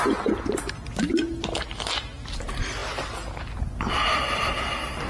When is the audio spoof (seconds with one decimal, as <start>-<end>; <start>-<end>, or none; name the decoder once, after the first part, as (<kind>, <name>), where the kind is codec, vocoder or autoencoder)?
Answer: none